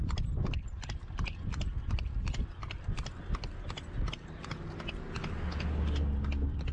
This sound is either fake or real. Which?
real